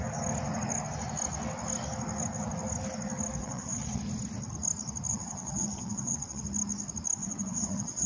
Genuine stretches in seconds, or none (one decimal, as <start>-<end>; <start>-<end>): 0.0-3.4; 4.0-5.1; 6.4-7.2